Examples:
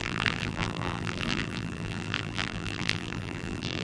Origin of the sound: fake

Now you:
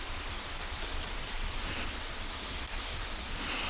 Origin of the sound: real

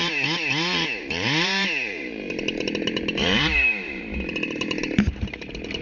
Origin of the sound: fake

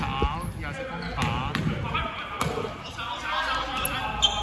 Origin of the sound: real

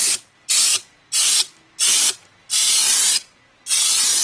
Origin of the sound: real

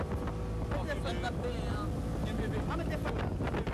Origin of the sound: real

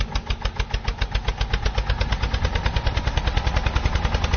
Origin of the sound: real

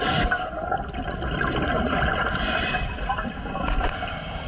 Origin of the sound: real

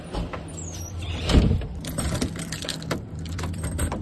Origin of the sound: fake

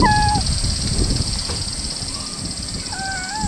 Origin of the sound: real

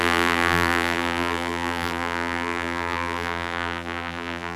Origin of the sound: fake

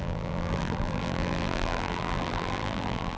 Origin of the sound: fake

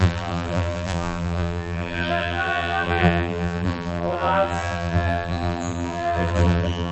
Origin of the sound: fake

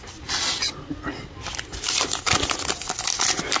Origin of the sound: real